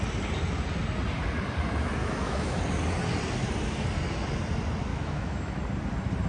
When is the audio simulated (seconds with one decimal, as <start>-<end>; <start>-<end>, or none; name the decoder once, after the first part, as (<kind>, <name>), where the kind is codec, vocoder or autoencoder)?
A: 2.0-2.6 (autoencoder, DAC-VAE); 4.9-5.6